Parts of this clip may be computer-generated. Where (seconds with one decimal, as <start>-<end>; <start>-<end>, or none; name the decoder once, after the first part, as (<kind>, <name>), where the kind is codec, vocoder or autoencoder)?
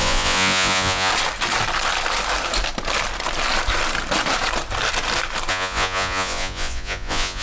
0.0-1.1 (vocoder, Vocos); 5.5-7.4